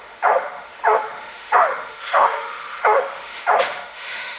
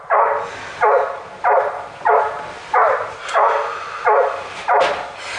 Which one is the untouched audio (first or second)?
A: second